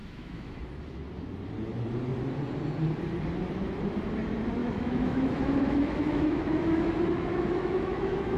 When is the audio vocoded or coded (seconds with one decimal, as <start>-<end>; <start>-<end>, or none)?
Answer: 0.0-0.6; 4.6-8.4